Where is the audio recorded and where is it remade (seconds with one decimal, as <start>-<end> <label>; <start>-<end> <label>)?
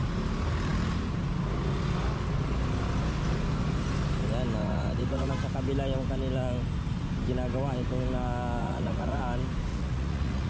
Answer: 0.0-4.6 recorded; 4.6-5.3 remade; 5.3-8.6 recorded; 8.6-9.2 remade; 9.2-9.7 recorded; 9.7-10.5 remade